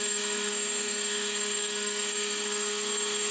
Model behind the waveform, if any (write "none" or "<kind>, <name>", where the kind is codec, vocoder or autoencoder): codec, SNAC